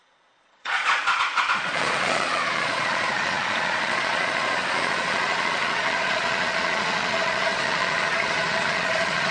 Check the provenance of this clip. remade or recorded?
remade